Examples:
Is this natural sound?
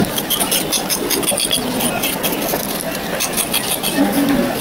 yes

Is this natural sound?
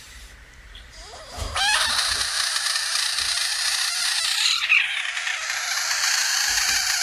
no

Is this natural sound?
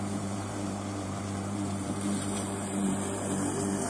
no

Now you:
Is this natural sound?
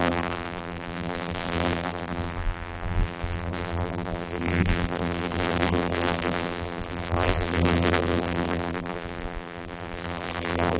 no